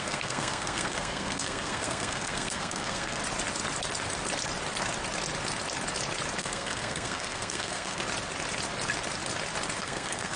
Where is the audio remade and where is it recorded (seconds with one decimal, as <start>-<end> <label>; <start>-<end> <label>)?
0.0-3.2 remade; 3.2-6.4 recorded; 6.4-8.0 remade; 8.0-9.8 recorded; 9.8-10.4 remade